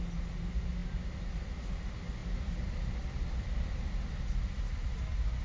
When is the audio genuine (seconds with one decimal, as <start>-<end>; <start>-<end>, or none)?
0.0-5.4